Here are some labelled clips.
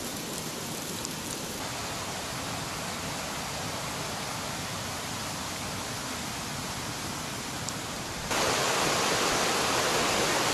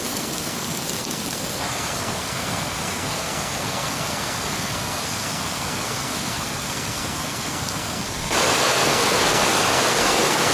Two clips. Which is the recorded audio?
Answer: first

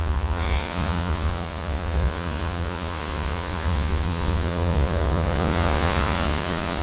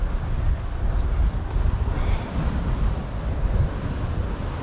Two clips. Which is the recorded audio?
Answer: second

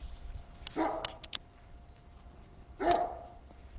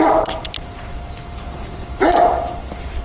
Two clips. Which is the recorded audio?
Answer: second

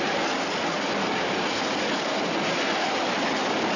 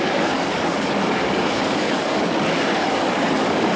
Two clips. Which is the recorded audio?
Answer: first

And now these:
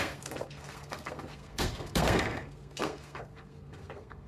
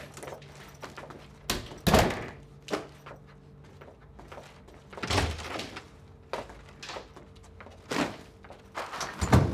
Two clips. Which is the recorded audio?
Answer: second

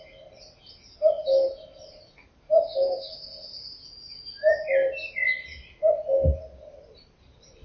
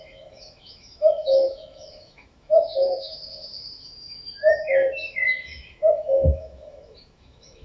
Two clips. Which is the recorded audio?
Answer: first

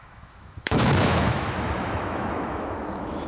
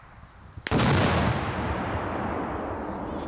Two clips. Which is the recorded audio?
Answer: second